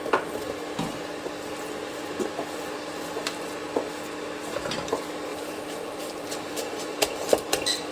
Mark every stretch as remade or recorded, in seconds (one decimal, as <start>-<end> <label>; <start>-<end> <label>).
0.0-5.3 recorded; 5.3-7.3 remade; 7.3-7.9 recorded